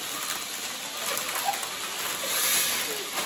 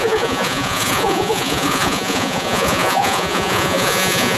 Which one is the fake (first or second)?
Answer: second